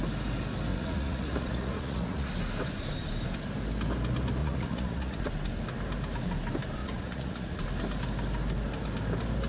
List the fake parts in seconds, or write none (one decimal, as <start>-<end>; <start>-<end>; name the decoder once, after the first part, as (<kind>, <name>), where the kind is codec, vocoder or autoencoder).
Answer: 0.7-2.3 (vocoder, Vocos); 4.4-5.3; 6.8-7.6